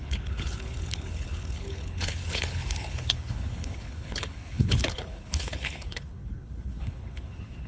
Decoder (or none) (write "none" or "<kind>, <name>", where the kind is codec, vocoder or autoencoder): codec, HILCodec